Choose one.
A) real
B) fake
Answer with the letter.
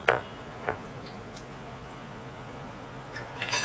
B